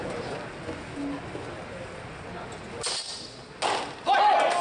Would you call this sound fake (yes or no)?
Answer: no